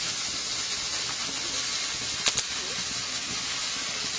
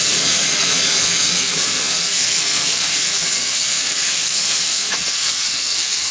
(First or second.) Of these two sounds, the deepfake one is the second